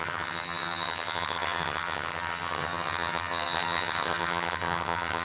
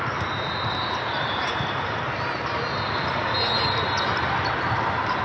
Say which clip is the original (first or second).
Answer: second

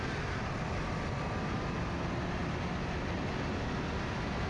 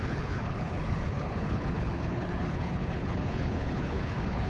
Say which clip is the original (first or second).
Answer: first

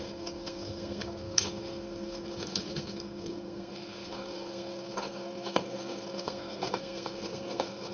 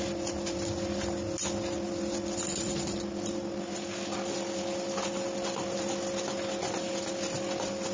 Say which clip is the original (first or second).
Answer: second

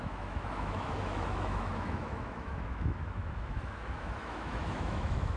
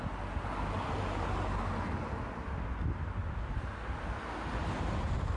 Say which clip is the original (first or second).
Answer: second